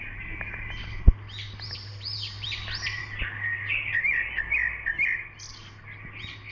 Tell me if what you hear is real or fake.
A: real